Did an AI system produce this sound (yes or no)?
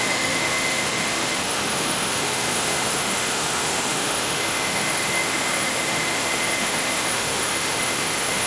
yes